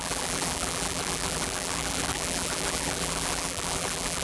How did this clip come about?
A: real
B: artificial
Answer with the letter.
B